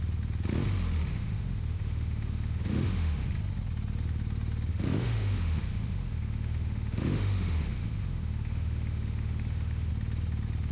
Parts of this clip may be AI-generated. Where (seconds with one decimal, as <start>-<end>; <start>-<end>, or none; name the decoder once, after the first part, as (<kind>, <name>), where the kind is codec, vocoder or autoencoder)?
1.1-3.3 (autoencoder, DAC-VAE); 4.7-9.9